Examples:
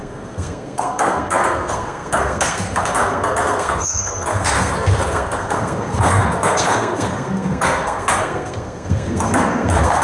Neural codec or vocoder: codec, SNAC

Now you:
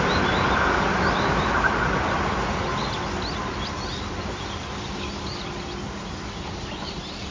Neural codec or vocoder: none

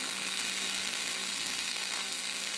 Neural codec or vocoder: codec, SNAC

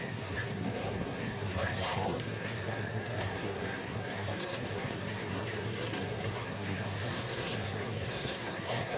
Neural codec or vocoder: codec, SNAC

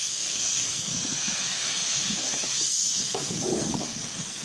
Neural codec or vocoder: codec, SNAC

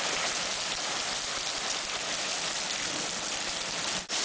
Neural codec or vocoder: none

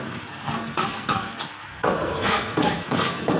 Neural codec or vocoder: codec, SNAC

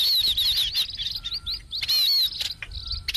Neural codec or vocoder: none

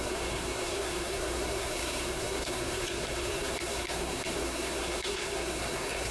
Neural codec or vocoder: codec, SNAC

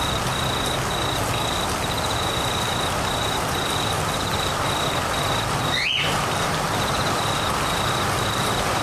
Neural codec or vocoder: none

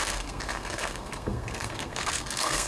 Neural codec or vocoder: codec, SNAC